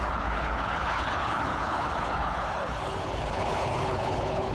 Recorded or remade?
remade